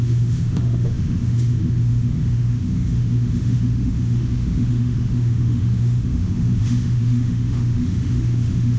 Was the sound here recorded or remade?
remade